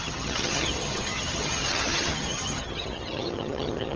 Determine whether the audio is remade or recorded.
remade